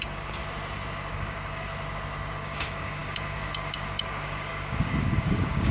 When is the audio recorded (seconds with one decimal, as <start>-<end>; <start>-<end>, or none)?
0.4-1.1; 1.7-2.3